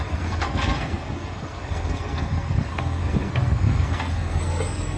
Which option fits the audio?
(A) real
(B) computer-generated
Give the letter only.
B